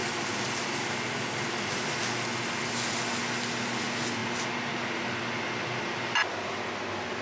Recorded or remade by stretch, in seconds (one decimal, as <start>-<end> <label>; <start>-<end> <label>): 0.0-7.2 recorded